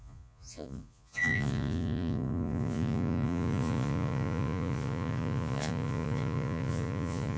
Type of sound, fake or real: fake